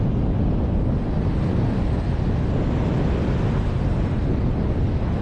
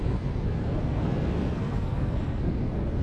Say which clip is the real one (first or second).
first